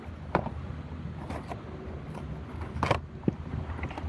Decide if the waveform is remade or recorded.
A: recorded